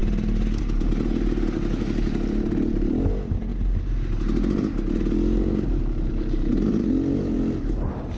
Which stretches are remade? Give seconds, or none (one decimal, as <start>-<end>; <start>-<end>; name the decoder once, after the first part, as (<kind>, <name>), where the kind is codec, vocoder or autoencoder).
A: none